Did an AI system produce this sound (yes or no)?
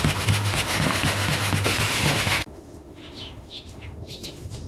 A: yes